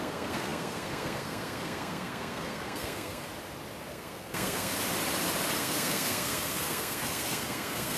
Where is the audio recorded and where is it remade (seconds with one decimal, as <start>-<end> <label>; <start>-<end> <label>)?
0.0-3.3 remade; 3.3-3.9 recorded; 3.9-4.7 remade; 4.7-5.6 recorded; 5.6-8.0 remade